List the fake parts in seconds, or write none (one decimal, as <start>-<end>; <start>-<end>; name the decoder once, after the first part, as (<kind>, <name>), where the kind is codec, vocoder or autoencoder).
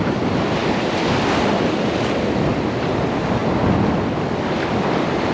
none